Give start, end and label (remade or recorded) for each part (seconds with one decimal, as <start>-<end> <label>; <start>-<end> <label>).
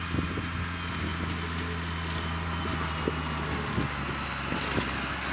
0.0-5.3 recorded